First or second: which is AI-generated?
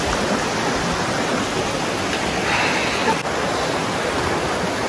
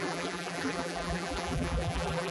second